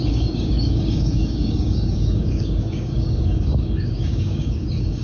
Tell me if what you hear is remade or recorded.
remade